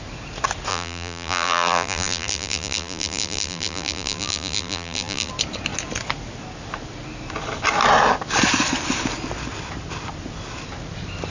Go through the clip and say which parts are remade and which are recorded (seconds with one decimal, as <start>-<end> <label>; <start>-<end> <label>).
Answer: 0.0-0.7 recorded; 0.7-5.3 remade; 5.3-11.3 recorded